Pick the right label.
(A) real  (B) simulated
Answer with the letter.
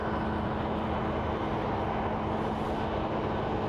A